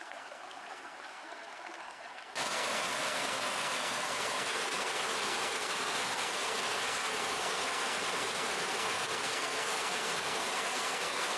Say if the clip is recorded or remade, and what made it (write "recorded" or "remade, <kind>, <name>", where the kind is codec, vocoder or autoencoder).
remade, codec, SNAC